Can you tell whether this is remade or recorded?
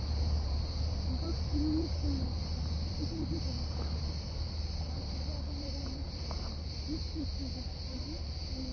remade